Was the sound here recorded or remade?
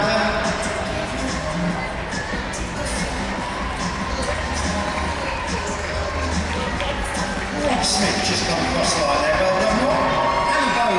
recorded